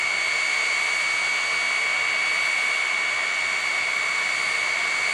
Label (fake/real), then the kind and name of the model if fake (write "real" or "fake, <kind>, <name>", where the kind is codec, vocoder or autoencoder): real